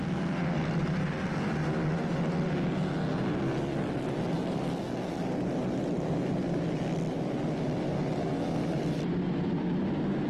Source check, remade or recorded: recorded